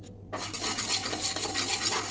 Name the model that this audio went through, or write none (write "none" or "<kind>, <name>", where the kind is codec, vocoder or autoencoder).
none